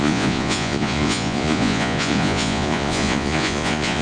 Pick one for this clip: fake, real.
fake